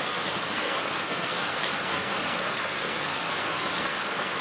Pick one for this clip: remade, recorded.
remade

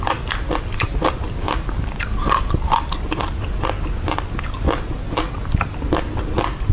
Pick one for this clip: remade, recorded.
recorded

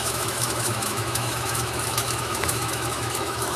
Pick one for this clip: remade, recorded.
remade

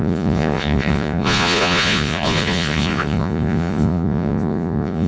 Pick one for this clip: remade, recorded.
remade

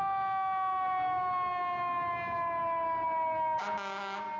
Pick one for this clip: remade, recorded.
recorded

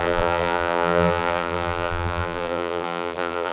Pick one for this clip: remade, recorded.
remade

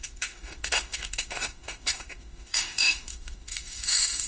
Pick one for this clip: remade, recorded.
remade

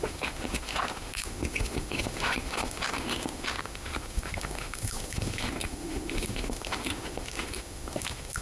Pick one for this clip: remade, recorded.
remade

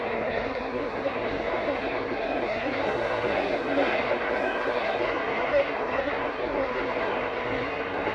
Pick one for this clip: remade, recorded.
remade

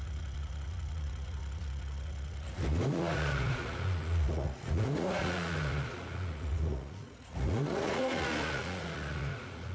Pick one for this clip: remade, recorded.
remade